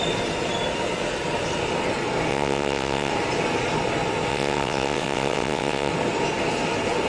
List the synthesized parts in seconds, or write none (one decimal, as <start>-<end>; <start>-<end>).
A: 2.3-3.1; 4.3-5.9